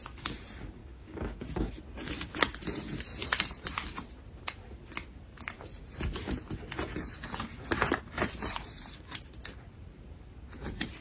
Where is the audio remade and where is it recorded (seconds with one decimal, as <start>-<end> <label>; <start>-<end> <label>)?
0.0-0.8 recorded; 0.8-1.7 remade; 1.7-11.0 recorded